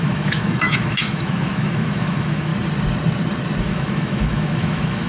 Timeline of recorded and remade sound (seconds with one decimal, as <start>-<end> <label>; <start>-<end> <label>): 0.0-2.5 remade; 2.5-3.6 recorded; 3.6-5.1 remade